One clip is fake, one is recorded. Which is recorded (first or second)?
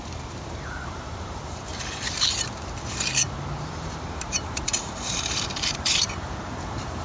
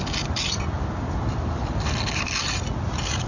second